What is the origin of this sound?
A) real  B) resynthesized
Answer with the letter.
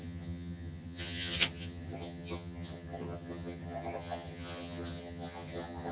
B